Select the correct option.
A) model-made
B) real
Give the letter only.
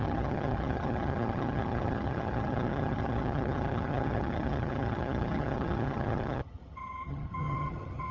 A